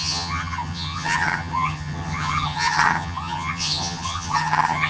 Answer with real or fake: fake